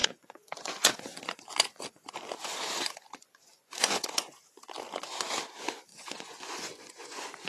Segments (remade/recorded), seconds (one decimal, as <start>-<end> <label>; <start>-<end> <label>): 0.0-4.5 remade; 4.5-5.9 recorded; 5.9-7.5 remade